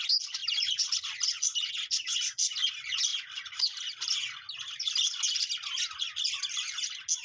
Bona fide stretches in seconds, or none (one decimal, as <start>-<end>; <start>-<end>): 0.0-7.2

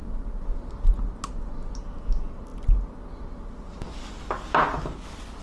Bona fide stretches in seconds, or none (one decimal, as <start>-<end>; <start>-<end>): 0.0-5.4

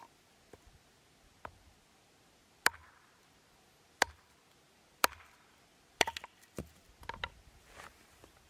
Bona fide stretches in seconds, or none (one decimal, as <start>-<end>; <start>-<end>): 0.0-8.5

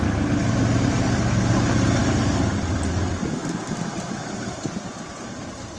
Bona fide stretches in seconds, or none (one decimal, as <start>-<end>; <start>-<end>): 0.0-5.8